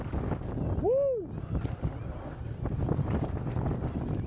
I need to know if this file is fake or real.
real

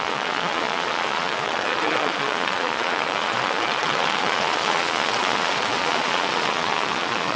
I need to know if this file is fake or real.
fake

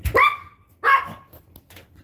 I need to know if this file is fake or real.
real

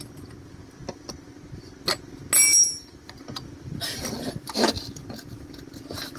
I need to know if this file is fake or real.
real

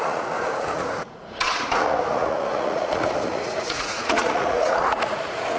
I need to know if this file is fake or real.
fake